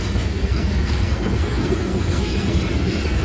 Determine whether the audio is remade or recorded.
remade